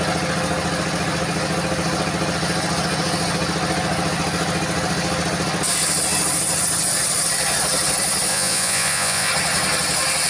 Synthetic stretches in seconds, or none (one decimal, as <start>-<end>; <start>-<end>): 8.3-9.3

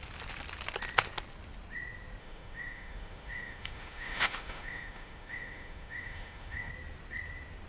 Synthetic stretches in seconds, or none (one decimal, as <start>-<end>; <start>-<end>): 2.2-6.7

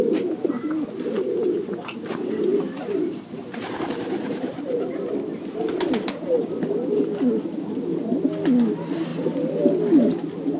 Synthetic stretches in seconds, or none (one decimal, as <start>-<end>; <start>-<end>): 2.5-4.8

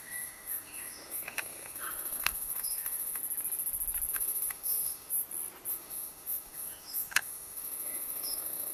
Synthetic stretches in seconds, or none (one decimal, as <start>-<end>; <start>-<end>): 0.0-3.2; 4.1-5.1; 5.7-8.7